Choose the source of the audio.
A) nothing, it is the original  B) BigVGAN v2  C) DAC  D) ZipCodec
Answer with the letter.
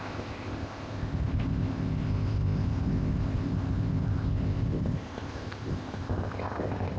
D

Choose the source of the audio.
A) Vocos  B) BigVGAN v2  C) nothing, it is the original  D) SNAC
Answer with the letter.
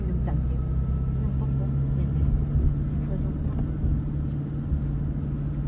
C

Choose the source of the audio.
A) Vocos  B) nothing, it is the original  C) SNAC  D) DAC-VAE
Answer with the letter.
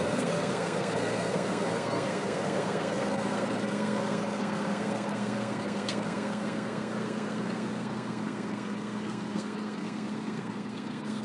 C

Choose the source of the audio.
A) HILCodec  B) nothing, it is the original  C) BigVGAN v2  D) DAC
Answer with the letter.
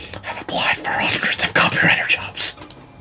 B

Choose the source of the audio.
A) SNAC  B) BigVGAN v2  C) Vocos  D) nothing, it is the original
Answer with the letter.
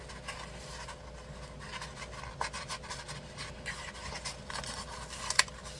D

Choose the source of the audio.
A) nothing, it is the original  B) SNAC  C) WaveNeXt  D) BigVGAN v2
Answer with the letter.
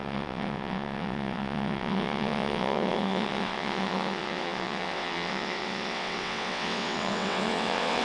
C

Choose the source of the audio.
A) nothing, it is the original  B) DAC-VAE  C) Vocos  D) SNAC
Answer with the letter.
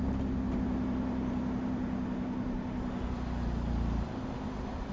A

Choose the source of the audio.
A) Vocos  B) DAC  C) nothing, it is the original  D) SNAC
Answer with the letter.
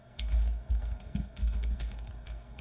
D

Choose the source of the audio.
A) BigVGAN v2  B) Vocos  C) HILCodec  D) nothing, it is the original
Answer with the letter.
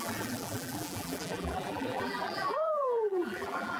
A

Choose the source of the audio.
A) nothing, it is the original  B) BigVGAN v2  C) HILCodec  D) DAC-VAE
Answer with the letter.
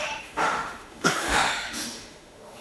D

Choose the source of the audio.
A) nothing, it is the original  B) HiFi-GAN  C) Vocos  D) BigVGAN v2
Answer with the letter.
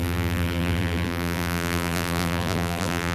D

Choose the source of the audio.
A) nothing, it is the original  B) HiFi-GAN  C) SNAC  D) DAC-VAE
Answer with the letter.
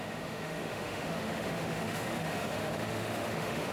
D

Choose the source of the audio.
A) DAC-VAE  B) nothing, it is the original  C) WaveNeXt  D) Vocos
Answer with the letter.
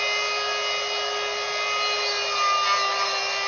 B